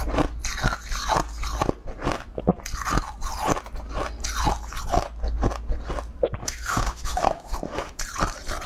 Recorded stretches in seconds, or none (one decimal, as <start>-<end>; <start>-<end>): 0.0-6.4; 8.0-8.7